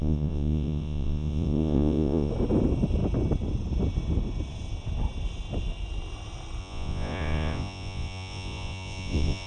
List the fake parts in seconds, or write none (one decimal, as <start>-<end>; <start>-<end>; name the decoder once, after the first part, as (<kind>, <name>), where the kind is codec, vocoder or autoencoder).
0.0-2.3 (vocoder, Vocos); 6.6-9.5